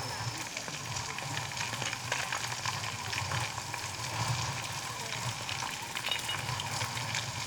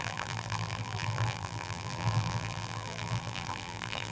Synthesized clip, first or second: second